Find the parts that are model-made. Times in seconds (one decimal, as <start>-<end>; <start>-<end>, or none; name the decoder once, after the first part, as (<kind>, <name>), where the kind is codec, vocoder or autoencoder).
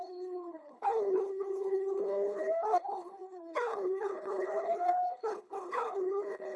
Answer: 0.0-6.6 (codec, HILCodec)